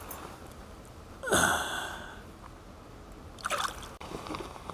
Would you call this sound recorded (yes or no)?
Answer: yes